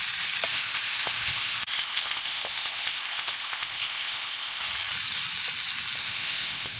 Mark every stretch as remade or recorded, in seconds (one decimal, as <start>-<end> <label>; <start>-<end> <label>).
0.0-0.5 recorded; 0.5-4.6 remade; 4.6-6.0 recorded; 6.0-6.8 remade